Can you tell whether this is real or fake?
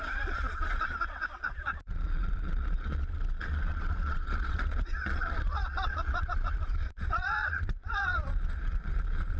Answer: fake